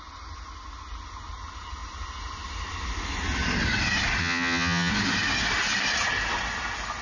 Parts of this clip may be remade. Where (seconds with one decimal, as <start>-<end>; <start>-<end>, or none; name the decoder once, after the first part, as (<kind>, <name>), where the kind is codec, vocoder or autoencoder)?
4.2-4.9 (vocoder, HiFi-GAN)